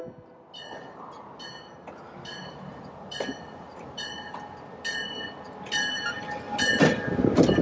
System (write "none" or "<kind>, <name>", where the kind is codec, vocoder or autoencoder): none